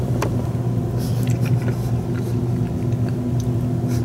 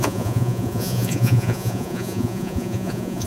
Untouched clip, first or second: first